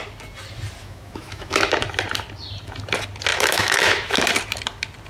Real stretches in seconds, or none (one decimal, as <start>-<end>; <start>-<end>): 0.0-0.8; 1.7-3.3; 4.3-5.1